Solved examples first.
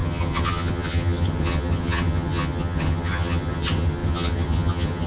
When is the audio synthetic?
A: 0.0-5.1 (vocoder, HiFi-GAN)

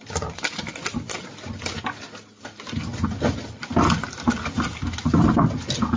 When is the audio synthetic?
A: none

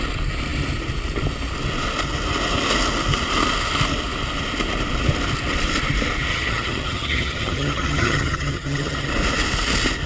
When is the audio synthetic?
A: 6.3-9.1 (vocoder, HiFi-GAN)

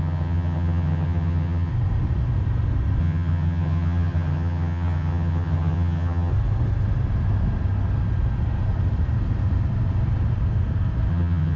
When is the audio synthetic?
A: 0.0-1.7 (vocoder, HiFi-GAN); 3.0-6.3; 11.1-11.6

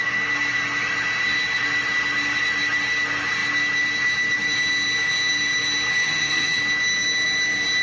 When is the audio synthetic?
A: 6.0-6.6 (vocoder, HiFi-GAN)

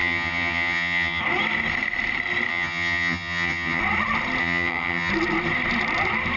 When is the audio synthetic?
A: 0.0-1.2 (vocoder, HiFi-GAN); 2.5-3.8; 4.4-5.1

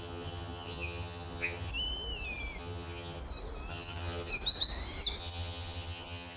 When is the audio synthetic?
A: 0.0-1.7 (vocoder, HiFi-GAN); 2.6-3.2; 3.7-4.3; 5.2-6.4